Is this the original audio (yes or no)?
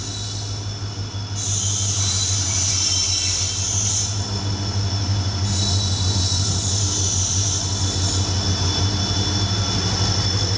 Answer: yes